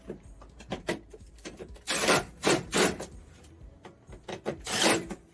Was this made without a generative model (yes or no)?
no